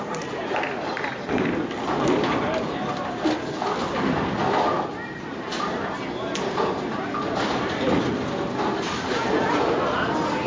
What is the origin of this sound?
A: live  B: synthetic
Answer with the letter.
A